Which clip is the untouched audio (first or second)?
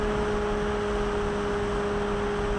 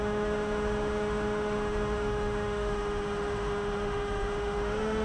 first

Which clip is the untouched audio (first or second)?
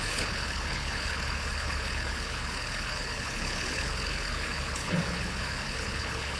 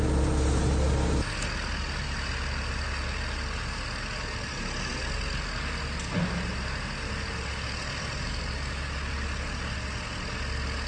second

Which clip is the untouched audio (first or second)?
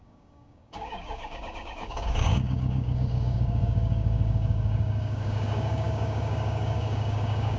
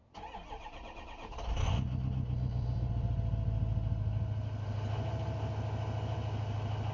second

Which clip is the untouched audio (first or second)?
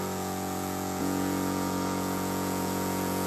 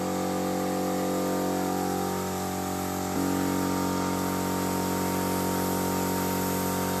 second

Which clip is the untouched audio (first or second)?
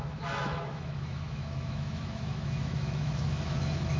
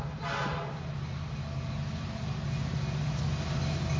second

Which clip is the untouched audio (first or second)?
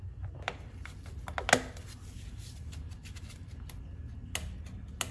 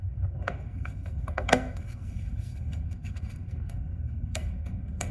first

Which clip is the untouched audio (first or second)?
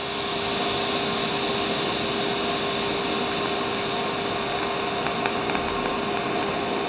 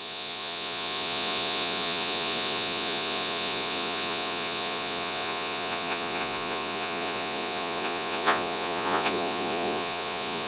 first